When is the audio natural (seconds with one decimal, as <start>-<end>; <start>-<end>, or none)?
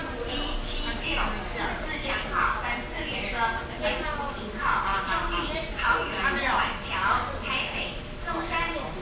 0.0-9.0